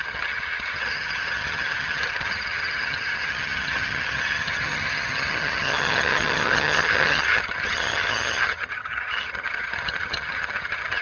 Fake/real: fake